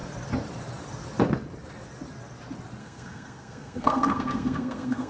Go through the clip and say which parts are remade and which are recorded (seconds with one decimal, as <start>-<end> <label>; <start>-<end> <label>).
0.0-2.8 recorded; 2.8-5.1 remade